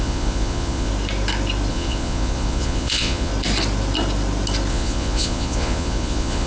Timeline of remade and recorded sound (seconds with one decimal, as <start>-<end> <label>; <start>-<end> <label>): 0.0-0.9 remade; 0.9-1.7 recorded; 1.7-3.3 remade; 3.3-4.7 recorded; 4.7-6.5 remade